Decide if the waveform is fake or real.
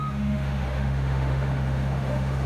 fake